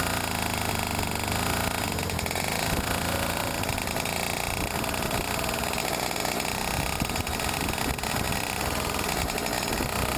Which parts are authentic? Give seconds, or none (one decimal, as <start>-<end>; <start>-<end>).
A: 0.0-10.2